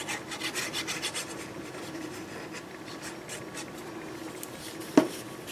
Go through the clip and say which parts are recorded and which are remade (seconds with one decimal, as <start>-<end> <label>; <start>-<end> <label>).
0.0-5.5 recorded